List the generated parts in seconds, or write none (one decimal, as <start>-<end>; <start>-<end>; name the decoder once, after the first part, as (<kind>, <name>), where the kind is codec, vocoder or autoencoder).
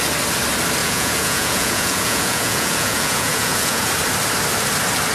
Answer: 0.8-3.9 (vocoder, Vocos)